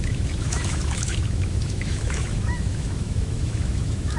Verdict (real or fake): fake